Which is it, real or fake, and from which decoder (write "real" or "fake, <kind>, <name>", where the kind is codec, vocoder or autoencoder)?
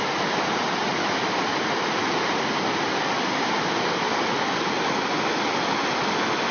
real